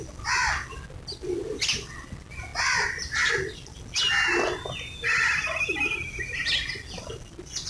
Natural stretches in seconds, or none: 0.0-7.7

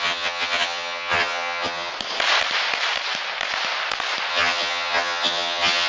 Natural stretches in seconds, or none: 1.9-4.3